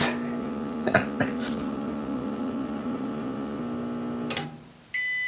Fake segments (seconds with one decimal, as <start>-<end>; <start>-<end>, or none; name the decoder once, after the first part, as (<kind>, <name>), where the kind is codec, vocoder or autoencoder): 0.4-3.6 (vocoder, Vocos)